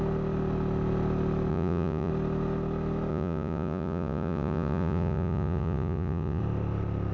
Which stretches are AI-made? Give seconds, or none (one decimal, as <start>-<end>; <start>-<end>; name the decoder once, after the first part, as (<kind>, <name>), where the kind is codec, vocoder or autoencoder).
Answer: 1.5-2.1 (vocoder, Vocos); 3.1-6.4